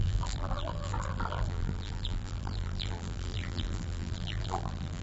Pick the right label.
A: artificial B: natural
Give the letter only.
A